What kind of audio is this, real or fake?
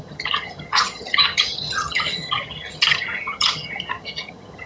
fake